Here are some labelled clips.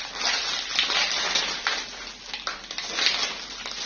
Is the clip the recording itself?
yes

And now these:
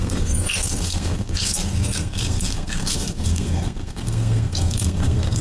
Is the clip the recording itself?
no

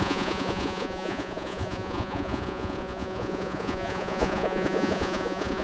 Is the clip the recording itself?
no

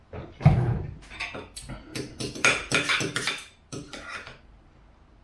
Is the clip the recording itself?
yes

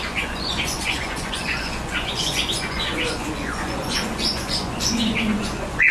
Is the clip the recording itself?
no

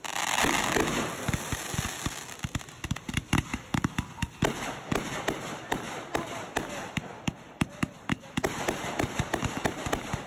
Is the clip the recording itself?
yes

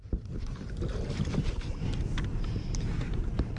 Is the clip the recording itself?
yes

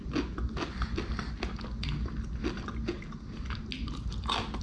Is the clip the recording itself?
yes